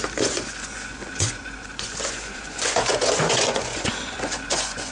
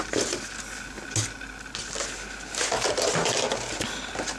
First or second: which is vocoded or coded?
first